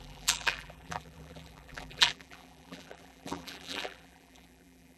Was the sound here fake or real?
fake